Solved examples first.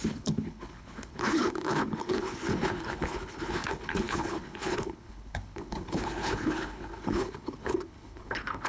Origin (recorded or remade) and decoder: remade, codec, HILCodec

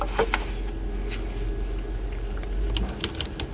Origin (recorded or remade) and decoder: recorded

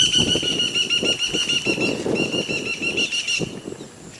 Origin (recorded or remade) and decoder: recorded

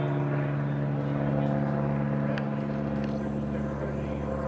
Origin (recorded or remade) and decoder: recorded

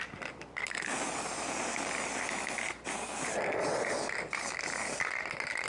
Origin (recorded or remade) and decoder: recorded